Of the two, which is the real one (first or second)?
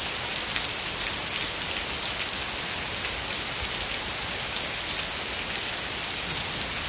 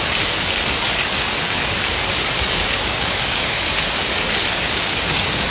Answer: first